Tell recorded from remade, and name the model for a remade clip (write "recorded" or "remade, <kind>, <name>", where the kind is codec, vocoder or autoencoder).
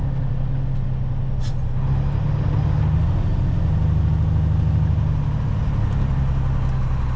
recorded